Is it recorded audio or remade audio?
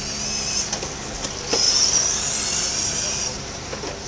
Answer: recorded